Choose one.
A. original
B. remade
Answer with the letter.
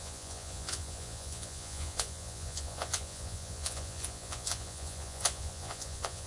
B